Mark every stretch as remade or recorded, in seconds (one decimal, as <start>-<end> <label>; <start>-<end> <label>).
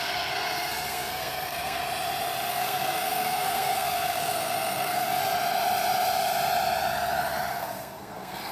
0.0-1.8 remade; 1.8-2.5 recorded; 2.5-5.2 remade; 5.2-7.5 recorded; 7.5-8.5 remade